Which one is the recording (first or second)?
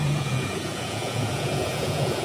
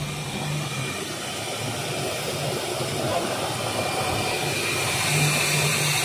second